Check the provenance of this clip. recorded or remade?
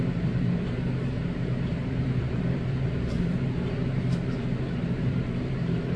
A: remade